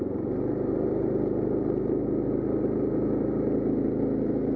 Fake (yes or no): no